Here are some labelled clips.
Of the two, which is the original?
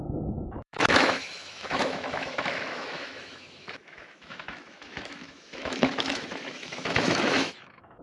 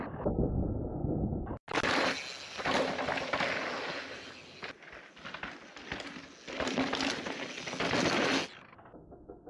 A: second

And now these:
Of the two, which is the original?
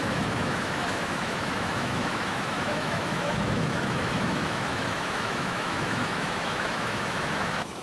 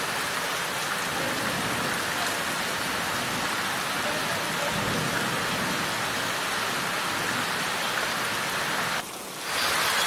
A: second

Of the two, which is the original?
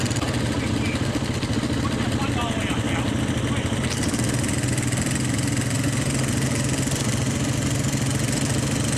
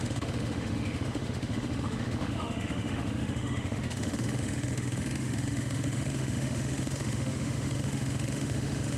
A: first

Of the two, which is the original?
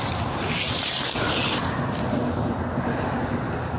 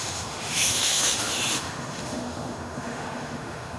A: first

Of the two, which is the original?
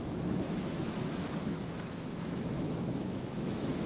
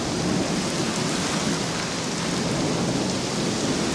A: second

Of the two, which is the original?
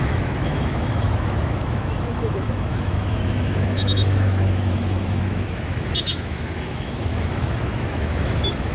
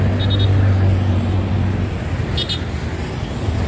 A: second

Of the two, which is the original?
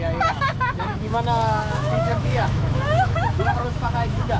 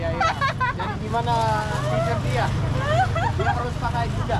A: second